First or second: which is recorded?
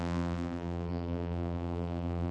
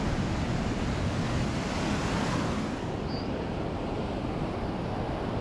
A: second